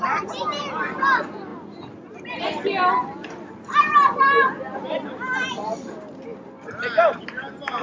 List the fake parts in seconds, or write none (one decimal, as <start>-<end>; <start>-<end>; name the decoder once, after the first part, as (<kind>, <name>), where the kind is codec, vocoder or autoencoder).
1.5-2.4 (vocoder, BigVGAN v2)